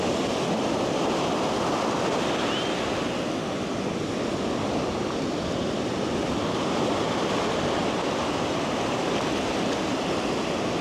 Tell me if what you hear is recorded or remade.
recorded